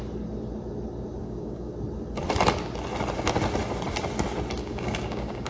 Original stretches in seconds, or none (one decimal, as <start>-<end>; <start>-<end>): 0.0-1.2; 1.7-4.6